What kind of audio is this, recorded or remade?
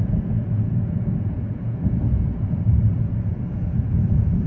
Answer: remade